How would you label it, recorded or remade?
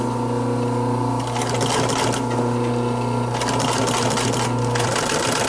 recorded